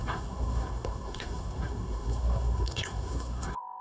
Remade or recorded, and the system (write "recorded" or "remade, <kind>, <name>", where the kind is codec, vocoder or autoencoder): remade, codec, SNAC